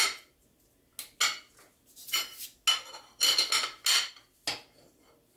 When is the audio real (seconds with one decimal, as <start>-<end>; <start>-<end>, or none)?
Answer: 0.0-5.4